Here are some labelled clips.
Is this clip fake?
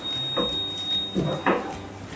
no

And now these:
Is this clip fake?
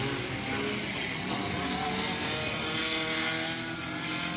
no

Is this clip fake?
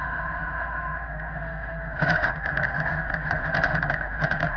yes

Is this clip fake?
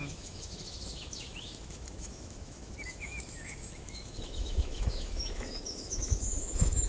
yes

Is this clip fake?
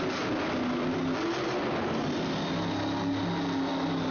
no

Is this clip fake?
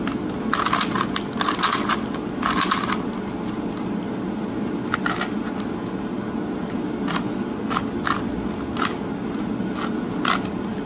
no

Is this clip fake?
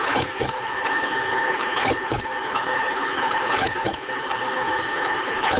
yes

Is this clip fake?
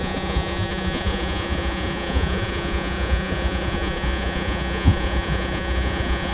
yes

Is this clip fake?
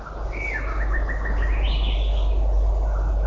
no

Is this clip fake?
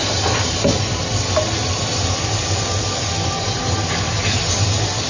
no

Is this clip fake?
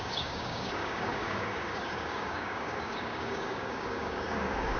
yes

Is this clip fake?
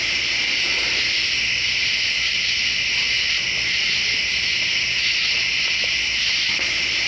no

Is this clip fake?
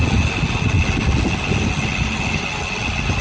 no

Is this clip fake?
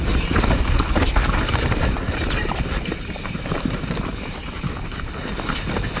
yes